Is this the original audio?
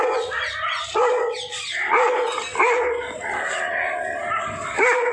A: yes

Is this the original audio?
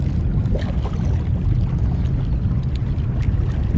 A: yes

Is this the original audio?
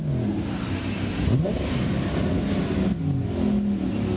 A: yes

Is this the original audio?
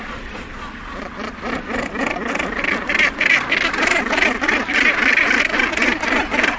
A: yes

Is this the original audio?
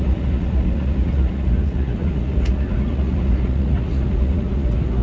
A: no